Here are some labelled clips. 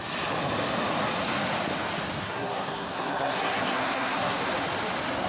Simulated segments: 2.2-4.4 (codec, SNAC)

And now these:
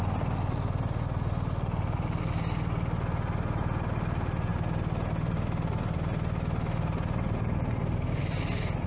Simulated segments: none

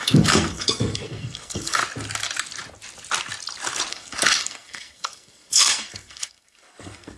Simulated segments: 0.0-1.8 (codec, SNAC); 3.9-7.2

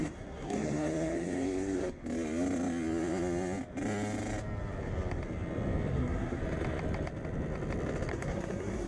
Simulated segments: 0.0-2.0 (codec, SNAC); 5.9-6.4; 8.1-8.9

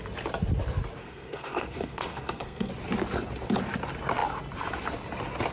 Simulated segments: 1.0-2.7 (codec, SNAC)

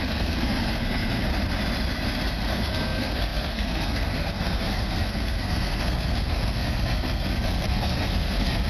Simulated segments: 0.0-1.3 (codec, SNAC); 2.5-8.7

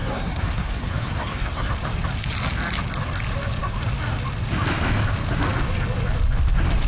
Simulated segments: 0.0-1.7 (codec, SNAC)